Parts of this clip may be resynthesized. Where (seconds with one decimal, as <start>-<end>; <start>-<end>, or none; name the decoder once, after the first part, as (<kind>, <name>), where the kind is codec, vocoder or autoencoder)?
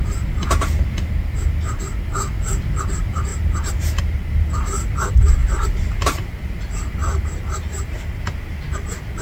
5.4-6.3 (vocoder, BigVGAN v2)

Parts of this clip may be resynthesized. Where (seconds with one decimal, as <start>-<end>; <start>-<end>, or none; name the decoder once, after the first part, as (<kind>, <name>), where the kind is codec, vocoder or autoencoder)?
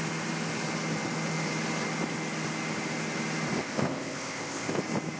3.6-4.8 (codec, ZipCodec)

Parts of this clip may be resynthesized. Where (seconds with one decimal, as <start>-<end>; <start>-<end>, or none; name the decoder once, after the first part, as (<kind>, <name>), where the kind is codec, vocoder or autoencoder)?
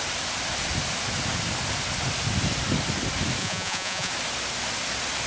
3.4-4.1 (vocoder, Vocos)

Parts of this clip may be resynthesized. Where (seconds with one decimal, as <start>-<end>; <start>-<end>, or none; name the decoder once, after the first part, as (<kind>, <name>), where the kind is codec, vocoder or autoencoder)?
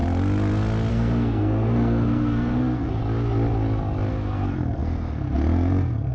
0.9-3.0 (codec, SNAC); 4.1-6.1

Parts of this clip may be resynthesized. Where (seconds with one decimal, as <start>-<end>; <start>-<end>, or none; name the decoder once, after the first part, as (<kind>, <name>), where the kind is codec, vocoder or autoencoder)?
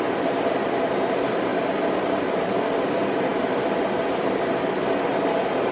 none